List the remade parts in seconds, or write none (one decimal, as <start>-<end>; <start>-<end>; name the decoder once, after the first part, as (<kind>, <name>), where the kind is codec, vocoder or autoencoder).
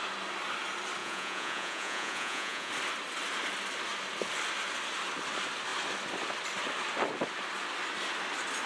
1.0-2.7 (vocoder, Vocos)